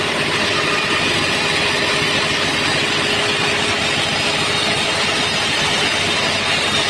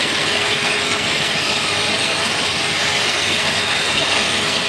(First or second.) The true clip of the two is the first